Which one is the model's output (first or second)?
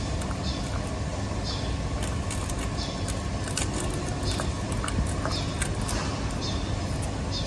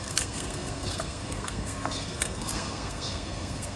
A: second